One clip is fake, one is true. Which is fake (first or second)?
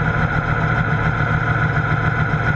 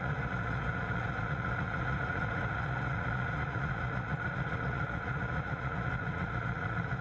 second